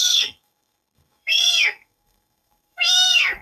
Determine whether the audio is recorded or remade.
remade